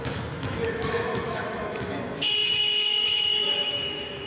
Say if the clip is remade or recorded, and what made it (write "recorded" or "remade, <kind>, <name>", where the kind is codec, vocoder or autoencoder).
remade, autoencoder, DAC-VAE